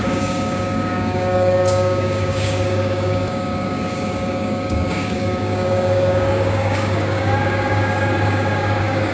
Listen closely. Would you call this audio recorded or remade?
remade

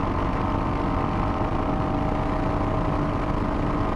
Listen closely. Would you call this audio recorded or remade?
recorded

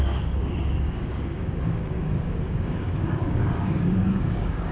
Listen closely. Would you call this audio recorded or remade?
remade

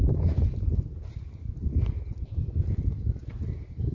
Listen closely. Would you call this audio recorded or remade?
recorded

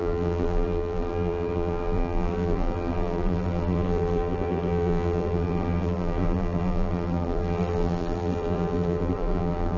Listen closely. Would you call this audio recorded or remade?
remade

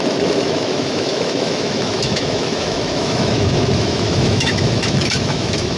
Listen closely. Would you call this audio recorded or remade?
remade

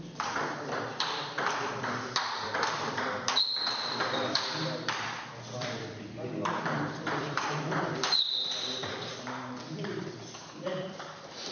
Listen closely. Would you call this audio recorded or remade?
remade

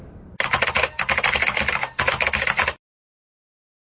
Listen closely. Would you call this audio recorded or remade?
recorded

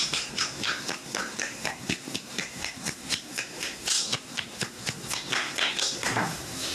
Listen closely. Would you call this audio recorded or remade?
remade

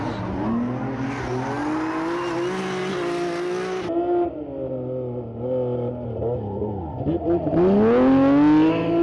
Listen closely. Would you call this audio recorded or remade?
recorded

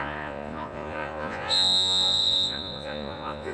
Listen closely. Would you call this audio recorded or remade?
remade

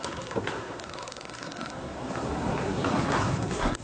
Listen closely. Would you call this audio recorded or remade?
remade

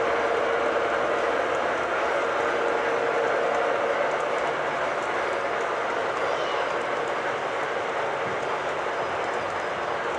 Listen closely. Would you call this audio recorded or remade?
recorded